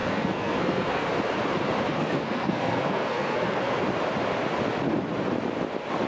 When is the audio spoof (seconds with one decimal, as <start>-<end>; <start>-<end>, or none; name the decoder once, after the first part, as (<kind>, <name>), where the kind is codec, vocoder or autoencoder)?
0.0-1.1 (codec, SNAC); 1.9-3.8

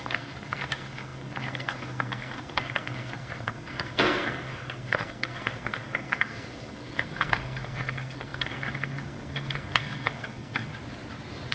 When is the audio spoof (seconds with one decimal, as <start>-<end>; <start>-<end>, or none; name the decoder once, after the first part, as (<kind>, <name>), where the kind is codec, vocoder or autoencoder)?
0.0-10.7 (codec, SNAC)

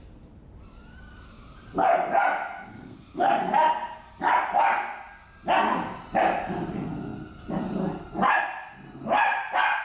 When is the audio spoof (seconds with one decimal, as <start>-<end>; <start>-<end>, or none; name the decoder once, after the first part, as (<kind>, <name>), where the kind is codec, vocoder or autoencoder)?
2.7-3.4 (codec, SNAC)

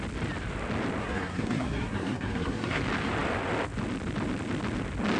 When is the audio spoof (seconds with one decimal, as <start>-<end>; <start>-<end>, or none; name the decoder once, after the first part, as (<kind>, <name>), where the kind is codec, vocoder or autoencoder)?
1.0-2.8 (codec, SNAC)